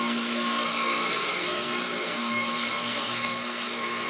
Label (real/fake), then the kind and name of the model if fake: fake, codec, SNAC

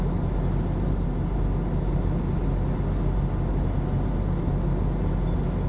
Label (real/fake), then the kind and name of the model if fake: real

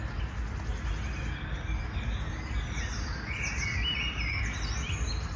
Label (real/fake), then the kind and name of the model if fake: real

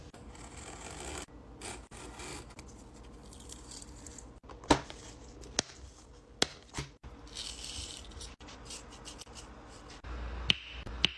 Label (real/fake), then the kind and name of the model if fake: real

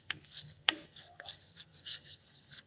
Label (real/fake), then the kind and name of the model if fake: fake, codec, SNAC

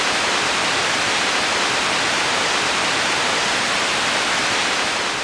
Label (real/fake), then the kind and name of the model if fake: real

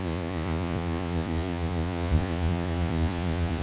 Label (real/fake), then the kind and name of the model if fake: fake, vocoder, Vocos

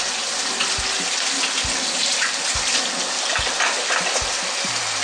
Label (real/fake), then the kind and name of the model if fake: real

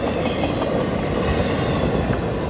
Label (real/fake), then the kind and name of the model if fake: real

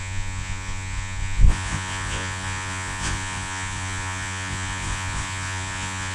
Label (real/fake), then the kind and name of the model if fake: fake, vocoder, Vocos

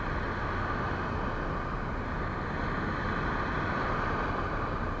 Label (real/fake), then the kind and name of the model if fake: real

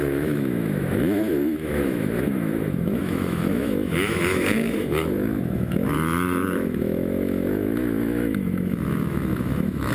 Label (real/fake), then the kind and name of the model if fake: fake, autoencoder, DAC-VAE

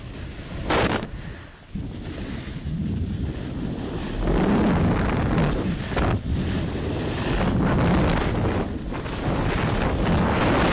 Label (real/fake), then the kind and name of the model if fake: real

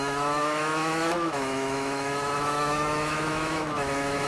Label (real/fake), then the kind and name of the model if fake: fake, autoencoder, DAC-VAE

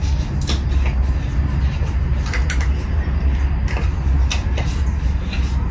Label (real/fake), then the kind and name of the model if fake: real